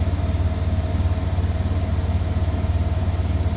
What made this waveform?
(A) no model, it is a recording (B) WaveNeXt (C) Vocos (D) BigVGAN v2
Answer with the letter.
A